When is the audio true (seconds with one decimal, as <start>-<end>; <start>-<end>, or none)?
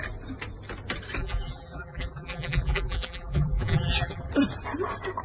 0.0-1.2; 4.3-5.2